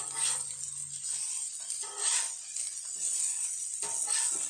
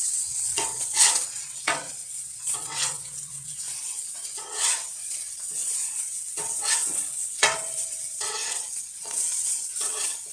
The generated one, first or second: second